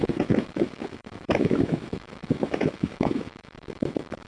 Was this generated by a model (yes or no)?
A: yes